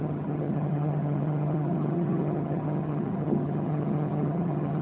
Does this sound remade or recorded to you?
remade